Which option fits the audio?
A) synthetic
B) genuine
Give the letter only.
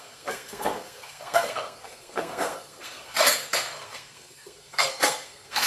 A